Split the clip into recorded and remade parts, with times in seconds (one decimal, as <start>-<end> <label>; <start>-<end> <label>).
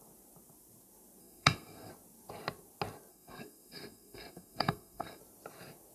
0.0-1.2 recorded; 1.2-1.9 remade; 1.9-3.1 recorded; 3.1-5.2 remade; 5.2-5.9 recorded